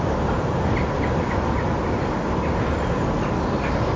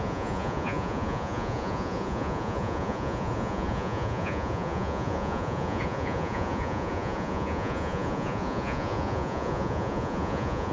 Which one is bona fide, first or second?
first